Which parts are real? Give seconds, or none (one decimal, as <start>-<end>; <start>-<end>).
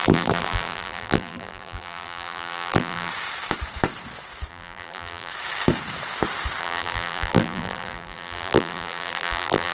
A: 3.1-4.5; 5.3-6.6